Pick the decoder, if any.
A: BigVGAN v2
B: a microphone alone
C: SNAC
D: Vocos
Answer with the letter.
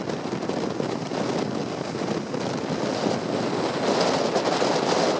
B